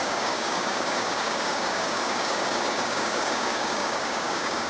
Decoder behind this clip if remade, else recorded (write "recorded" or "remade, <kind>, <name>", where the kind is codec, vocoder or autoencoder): remade, codec, DAC